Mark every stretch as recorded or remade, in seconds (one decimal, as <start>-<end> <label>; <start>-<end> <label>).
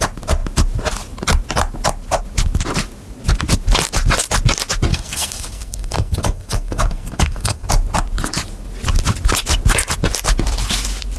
0.0-4.9 recorded; 4.9-7.7 remade; 7.7-11.2 recorded